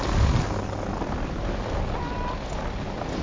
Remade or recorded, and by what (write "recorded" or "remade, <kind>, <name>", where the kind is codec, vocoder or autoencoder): recorded